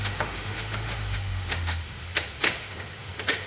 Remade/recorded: remade